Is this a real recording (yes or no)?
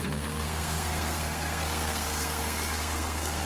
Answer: no